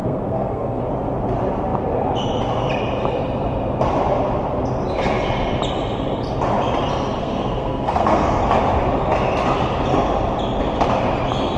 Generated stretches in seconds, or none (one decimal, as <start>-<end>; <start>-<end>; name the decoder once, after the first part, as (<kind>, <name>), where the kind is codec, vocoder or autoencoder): 0.0-0.8 (codec, SNAC); 7.2-8.4